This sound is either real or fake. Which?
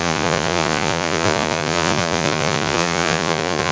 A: fake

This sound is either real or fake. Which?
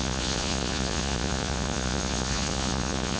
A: fake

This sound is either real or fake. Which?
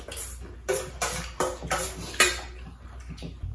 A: real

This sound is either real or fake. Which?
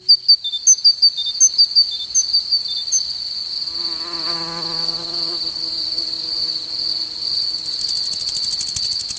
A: real